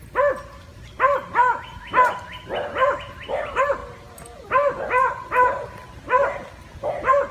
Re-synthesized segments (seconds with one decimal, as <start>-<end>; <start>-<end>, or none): none